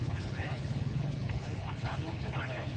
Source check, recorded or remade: remade